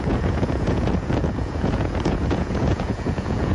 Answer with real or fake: fake